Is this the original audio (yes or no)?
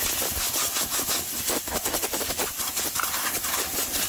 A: yes